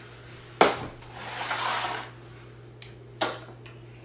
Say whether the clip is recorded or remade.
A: recorded